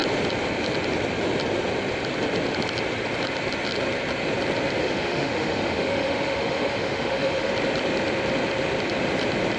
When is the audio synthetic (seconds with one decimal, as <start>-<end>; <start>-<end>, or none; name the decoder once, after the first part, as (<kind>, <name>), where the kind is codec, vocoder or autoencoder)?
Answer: 4.8-7.5 (autoencoder, DAC-VAE)